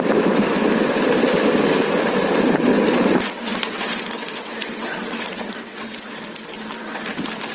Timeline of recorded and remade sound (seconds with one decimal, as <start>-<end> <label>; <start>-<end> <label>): 0.0-2.7 recorded; 2.7-6.1 remade; 6.1-7.5 recorded